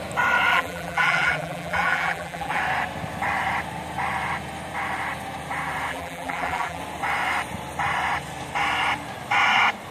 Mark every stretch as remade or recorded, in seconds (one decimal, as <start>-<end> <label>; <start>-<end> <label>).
0.0-0.5 recorded; 0.5-2.6 remade; 2.6-5.9 recorded; 5.9-6.8 remade; 6.8-9.9 recorded